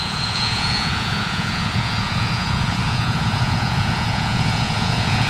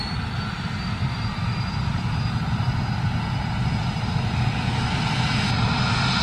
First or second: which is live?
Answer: second